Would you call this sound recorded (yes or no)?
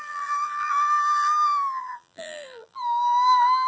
no